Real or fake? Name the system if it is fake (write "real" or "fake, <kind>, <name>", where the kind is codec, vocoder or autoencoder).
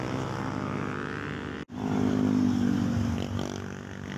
real